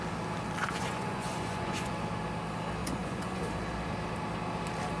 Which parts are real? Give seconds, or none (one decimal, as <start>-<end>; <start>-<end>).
0.0-0.6; 1.9-2.8; 3.4-5.0

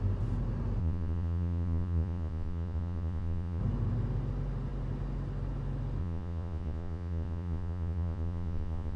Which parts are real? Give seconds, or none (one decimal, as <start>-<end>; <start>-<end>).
0.0-0.8; 3.6-6.0

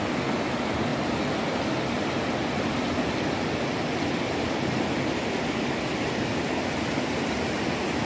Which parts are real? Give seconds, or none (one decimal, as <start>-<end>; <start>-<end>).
0.0-8.1

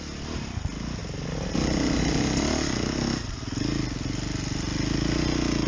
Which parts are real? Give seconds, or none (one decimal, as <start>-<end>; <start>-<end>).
0.0-5.7

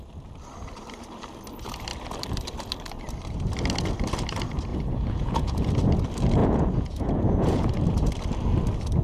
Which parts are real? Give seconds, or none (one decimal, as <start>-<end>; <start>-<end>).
0.0-4.7; 5.7-6.4; 7.7-9.0

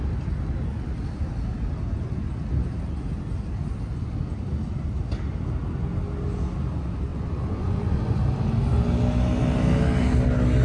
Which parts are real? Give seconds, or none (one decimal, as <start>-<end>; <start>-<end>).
0.0-7.1; 8.2-10.6

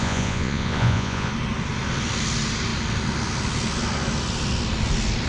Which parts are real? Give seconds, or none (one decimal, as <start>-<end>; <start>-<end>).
1.3-5.3

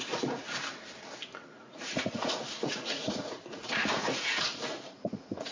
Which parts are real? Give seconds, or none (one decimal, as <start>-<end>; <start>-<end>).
0.4-1.5